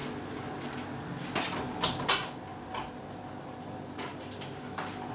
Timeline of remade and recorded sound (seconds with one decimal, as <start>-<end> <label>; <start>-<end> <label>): 0.0-5.1 recorded